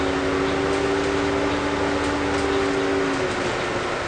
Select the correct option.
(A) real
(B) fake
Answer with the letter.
A